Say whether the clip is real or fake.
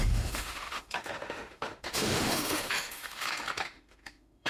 fake